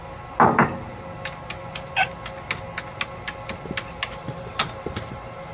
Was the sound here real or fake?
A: real